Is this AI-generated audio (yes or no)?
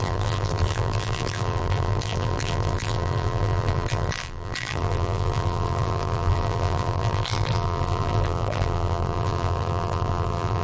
yes